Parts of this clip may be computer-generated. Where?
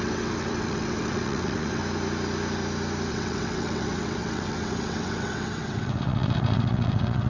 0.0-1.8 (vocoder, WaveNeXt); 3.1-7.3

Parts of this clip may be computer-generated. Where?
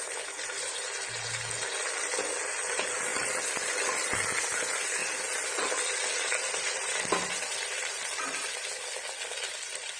none